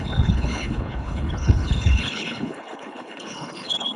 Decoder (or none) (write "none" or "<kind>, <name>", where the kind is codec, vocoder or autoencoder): codec, HILCodec